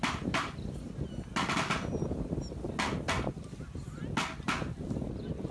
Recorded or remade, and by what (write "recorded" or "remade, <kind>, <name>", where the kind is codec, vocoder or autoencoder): recorded